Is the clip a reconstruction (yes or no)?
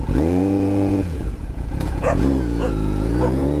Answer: yes